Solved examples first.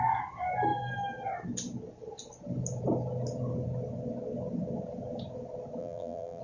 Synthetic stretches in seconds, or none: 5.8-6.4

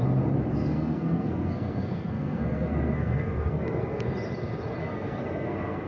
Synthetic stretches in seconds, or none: 0.5-4.0; 4.8-5.9

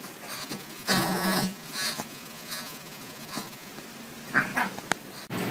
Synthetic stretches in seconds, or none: 0.4-3.7

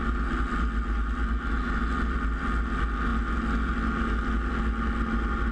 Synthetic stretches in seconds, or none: none

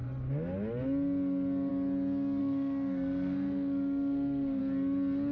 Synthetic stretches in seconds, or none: 2.4-4.6